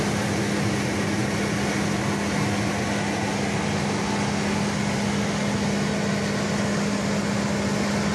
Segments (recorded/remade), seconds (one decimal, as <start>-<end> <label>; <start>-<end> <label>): 0.0-8.1 recorded